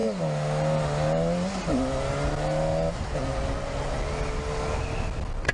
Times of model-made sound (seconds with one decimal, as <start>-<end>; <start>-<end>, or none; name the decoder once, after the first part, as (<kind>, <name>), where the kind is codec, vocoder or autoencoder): none